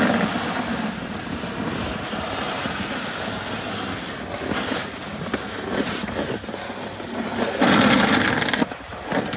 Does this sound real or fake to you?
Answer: real